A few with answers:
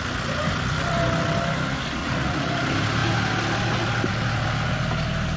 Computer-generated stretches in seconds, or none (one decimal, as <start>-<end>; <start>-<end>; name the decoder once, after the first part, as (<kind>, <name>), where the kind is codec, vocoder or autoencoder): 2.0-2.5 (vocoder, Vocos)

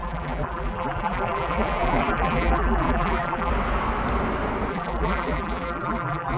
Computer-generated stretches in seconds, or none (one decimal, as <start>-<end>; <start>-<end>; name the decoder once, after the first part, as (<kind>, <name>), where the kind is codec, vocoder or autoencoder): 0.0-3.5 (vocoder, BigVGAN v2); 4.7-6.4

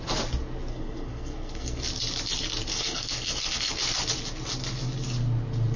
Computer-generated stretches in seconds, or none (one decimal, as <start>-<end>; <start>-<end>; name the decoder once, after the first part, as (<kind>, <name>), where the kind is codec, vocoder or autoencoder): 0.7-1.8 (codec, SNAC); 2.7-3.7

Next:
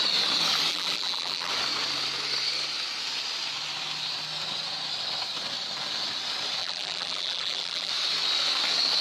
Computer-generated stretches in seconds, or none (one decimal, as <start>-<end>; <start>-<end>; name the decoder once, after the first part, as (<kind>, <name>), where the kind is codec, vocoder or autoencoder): 0.7-1.5 (vocoder, BigVGAN v2); 6.6-7.9